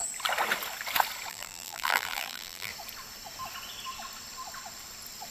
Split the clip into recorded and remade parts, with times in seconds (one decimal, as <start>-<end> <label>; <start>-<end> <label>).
0.0-1.3 recorded; 1.3-2.7 remade; 2.7-5.3 recorded